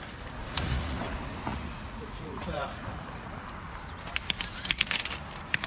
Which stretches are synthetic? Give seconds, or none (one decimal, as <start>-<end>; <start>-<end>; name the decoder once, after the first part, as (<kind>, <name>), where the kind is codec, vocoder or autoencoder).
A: 0.4-1.1 (vocoder, Vocos); 1.5-3.3